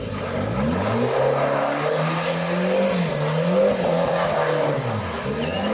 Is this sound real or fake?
real